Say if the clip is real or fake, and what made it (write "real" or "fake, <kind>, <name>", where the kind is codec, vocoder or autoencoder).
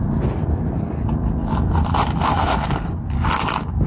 real